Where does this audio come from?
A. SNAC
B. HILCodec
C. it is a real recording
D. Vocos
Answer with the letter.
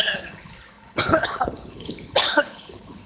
B